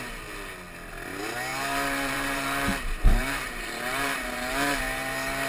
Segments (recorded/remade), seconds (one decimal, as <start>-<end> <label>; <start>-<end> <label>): 0.0-1.5 recorded; 1.5-4.8 remade; 4.8-5.5 recorded